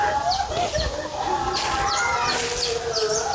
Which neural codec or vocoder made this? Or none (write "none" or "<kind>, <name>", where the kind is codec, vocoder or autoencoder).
none